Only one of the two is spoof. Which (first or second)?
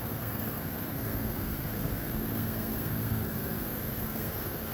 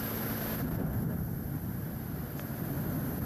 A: first